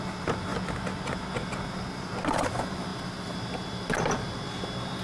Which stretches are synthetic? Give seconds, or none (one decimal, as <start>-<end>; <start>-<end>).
none